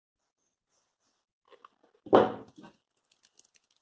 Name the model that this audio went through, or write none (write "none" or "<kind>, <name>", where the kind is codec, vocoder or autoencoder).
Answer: none